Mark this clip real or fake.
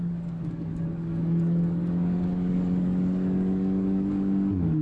fake